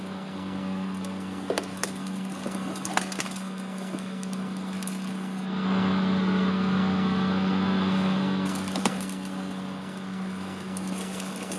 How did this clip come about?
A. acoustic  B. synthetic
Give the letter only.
B